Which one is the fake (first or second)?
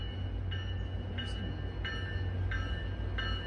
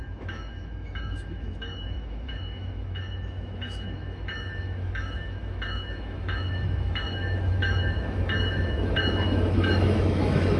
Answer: second